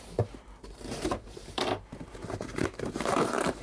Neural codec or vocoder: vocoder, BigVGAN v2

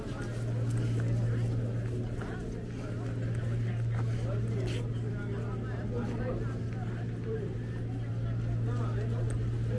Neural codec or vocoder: none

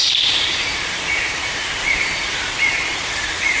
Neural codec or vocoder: vocoder, BigVGAN v2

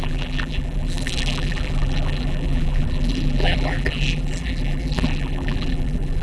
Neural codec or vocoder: vocoder, BigVGAN v2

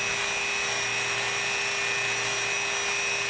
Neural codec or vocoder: none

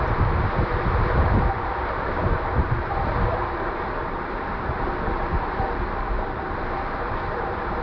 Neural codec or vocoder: vocoder, BigVGAN v2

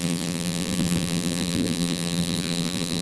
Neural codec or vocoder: vocoder, BigVGAN v2